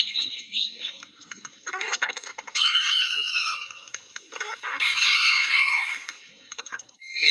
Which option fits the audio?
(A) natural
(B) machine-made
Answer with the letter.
B